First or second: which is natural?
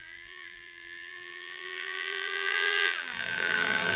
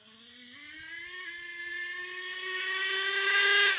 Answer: second